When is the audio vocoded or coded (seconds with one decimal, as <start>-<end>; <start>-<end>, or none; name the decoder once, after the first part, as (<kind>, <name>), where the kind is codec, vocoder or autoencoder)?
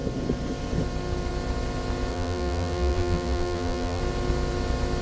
2.1-4.0 (vocoder, BigVGAN v2)